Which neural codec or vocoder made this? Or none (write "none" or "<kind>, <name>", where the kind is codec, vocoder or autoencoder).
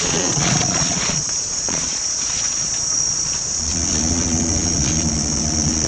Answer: vocoder, Vocos